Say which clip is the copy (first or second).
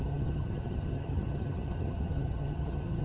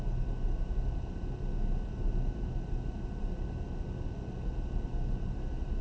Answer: first